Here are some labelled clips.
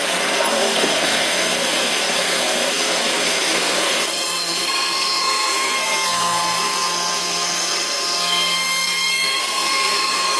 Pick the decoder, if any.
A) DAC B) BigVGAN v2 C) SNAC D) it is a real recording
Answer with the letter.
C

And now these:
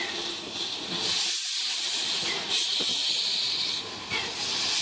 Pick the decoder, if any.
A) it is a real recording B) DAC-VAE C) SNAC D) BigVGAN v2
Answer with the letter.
A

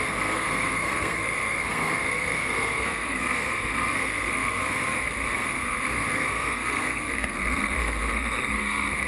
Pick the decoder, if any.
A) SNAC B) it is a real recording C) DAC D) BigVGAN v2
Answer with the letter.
A